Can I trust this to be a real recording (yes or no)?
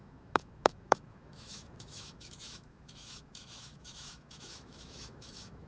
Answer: no